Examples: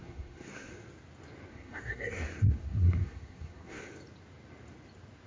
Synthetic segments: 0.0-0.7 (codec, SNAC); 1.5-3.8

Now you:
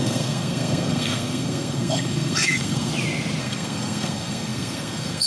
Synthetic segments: 0.0-2.9 (codec, SNAC); 3.4-5.3

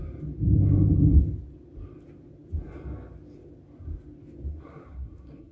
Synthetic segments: 4.5-5.5 (codec, SNAC)

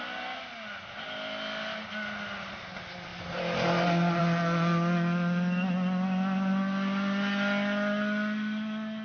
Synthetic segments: none

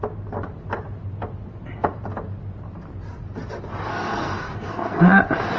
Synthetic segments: 3.9-5.0 (codec, SNAC)